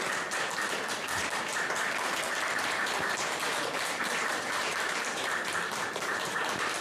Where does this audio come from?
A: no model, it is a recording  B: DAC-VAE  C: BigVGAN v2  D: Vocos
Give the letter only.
C